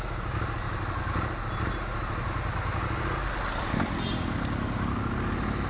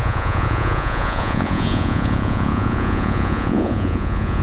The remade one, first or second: second